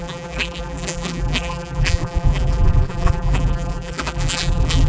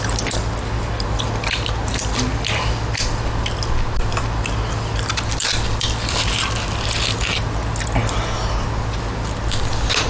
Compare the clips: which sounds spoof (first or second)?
first